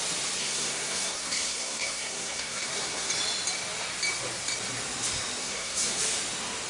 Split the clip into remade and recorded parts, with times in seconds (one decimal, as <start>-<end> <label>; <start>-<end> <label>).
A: 0.0-0.4 recorded; 0.4-3.1 remade; 3.1-5.4 recorded; 5.4-6.0 remade; 6.0-6.7 recorded